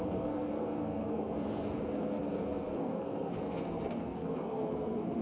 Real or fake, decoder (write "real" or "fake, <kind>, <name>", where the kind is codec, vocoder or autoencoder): fake, codec, SNAC